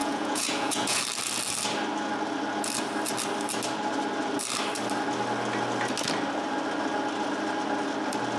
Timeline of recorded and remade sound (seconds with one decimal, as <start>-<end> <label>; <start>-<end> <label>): 0.0-1.0 remade; 1.0-8.4 recorded